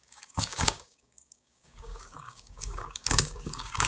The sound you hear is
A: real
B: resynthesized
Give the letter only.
B